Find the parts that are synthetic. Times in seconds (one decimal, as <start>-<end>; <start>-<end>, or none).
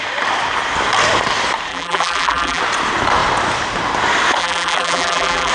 1.7-2.6; 4.4-5.5